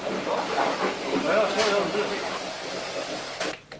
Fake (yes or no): no